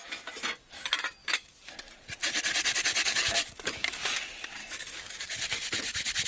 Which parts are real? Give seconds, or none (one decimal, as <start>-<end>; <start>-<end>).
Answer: 0.0-1.2; 1.7-3.0; 4.1-4.6; 5.2-6.3